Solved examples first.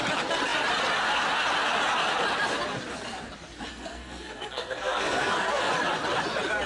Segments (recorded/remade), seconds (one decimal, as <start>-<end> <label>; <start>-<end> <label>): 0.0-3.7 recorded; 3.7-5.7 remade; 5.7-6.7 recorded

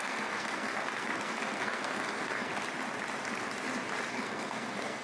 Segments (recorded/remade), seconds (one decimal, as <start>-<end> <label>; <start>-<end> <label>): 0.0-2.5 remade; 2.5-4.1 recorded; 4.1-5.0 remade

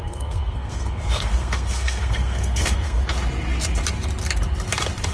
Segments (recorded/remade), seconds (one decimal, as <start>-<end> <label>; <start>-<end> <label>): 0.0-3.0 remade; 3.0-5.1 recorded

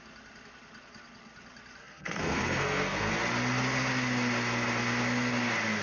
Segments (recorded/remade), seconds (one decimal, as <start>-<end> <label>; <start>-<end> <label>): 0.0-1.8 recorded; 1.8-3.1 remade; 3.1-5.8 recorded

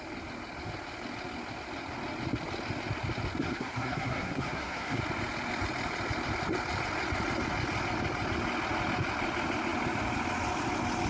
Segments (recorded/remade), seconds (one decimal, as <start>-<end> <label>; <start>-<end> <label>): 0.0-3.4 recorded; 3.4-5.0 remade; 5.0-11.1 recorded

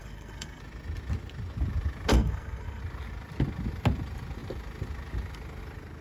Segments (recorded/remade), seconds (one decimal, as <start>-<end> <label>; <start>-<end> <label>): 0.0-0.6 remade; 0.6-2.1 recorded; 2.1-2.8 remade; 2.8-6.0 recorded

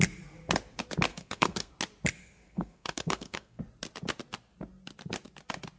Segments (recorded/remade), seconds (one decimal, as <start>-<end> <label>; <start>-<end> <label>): 0.0-1.1 recorded; 1.1-1.7 remade; 1.7-2.2 recorded; 2.2-3.6 remade; 3.6-5.8 recorded

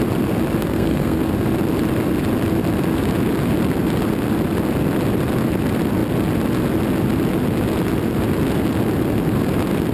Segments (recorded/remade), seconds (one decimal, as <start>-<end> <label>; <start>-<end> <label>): 0.0-0.6 recorded; 0.6-1.2 remade; 1.2-9.9 recorded